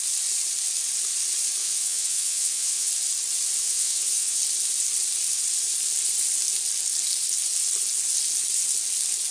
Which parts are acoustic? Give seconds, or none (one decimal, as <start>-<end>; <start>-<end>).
0.0-1.6; 2.9-3.6; 4.4-9.3